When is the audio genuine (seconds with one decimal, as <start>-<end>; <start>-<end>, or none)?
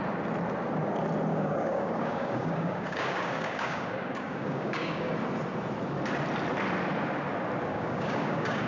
0.0-1.3; 5.1-7.7